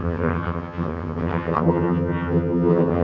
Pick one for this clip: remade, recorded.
remade